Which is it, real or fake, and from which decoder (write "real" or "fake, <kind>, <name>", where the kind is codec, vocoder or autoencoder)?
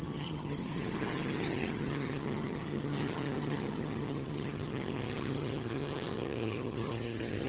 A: fake, vocoder, HiFi-GAN